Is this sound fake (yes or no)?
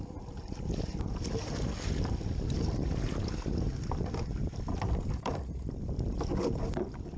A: no